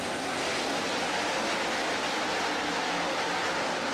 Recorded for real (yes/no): yes